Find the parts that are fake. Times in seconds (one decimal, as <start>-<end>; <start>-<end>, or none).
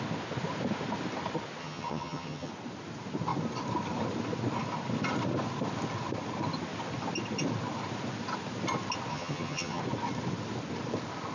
1.6-2.5; 9.1-9.8